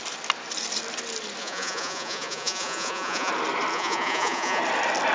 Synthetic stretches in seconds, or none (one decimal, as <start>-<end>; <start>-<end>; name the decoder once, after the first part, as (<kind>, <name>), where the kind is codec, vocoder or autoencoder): 1.4-3.3 (vocoder, Vocos); 3.7-4.6